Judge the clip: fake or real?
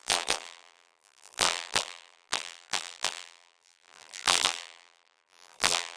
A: fake